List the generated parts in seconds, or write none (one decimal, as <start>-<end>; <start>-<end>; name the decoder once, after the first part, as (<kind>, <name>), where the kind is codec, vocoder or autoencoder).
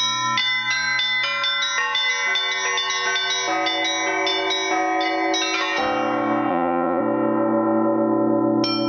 6.5-7.0 (vocoder, Vocos)